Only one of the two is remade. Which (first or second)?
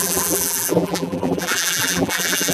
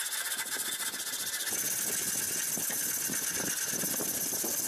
first